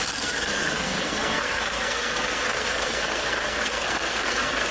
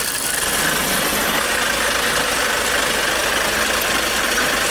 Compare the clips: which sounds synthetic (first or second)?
first